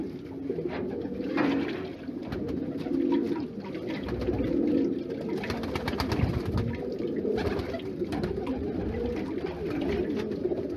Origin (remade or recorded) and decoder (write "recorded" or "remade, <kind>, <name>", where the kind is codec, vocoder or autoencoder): recorded